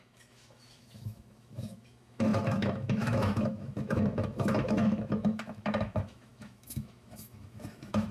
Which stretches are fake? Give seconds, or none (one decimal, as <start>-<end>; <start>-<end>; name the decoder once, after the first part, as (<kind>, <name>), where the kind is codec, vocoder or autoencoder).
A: 0.0-8.1 (autoencoder, DAC-VAE)